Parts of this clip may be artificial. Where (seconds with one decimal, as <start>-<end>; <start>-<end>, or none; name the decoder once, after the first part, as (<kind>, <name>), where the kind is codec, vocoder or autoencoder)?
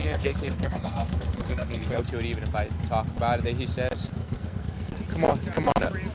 0.0-2.0 (codec, SNAC); 4.2-4.9